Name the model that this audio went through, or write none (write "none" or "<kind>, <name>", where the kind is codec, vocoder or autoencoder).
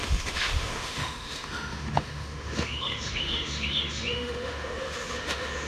autoencoder, DAC-VAE